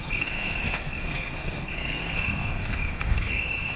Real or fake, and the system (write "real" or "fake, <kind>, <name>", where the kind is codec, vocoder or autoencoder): fake, codec, SNAC